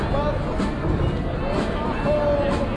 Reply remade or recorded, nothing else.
recorded